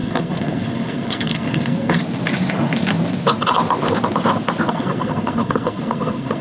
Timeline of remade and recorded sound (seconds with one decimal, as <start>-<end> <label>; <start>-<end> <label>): 0.0-2.0 remade; 2.0-4.7 recorded; 4.7-6.4 remade